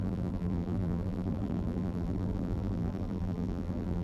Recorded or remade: remade